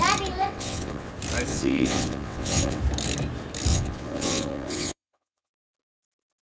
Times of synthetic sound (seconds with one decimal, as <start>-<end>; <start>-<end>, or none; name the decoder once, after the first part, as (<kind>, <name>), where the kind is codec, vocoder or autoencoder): 0.4-1.1 (vocoder, WaveNeXt); 1.5-2.8; 3.7-5.5

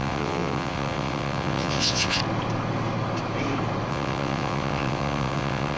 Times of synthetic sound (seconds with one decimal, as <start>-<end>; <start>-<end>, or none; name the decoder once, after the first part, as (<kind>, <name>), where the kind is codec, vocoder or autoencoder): 0.0-2.2 (vocoder, WaveNeXt); 3.9-5.8

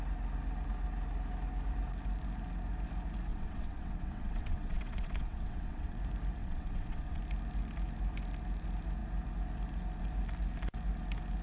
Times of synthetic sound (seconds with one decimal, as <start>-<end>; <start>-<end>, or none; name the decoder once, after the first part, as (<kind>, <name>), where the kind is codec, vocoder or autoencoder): 3.3-6.0 (vocoder, WaveNeXt); 6.4-7.2

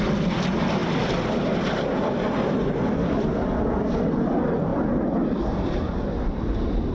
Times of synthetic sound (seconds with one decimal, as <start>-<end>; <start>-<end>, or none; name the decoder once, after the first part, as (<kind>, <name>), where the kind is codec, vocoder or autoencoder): none

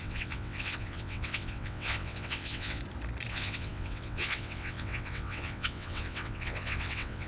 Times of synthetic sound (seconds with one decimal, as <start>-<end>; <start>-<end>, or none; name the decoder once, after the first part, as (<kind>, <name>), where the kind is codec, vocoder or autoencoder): 0.0-2.8 (vocoder, WaveNeXt); 3.3-7.3

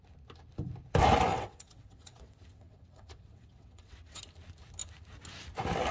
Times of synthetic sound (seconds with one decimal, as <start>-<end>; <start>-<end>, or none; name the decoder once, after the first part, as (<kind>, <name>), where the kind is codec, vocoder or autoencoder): 1.3-4.2 (vocoder, WaveNeXt)

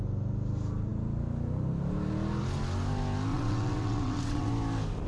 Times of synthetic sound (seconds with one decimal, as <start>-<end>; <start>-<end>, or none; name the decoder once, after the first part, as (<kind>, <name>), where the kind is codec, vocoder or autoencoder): 3.3-4.5 (vocoder, WaveNeXt)